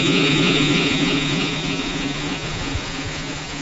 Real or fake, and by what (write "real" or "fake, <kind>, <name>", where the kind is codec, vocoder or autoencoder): fake, vocoder, Vocos